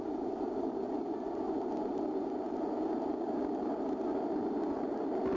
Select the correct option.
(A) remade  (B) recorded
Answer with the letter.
B